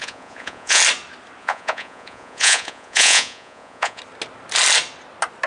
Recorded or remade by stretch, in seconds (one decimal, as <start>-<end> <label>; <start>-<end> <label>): 0.0-0.8 remade; 0.8-1.4 recorded; 1.4-4.0 remade; 4.0-5.5 recorded